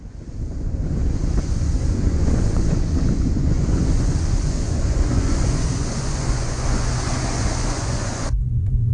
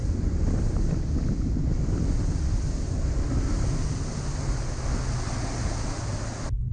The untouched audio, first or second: second